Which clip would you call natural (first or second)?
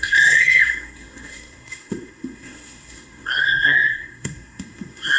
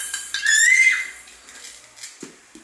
second